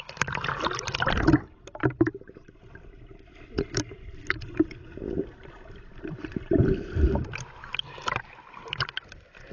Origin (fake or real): fake